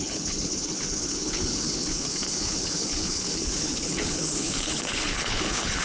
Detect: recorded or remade remade